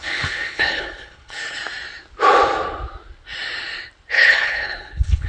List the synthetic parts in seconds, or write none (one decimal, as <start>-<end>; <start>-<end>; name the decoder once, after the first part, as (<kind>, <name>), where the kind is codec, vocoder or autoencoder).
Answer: 0.0-1.6 (codec, HILCodec); 4.1-5.3